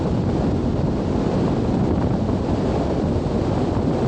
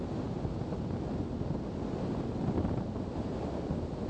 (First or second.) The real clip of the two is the second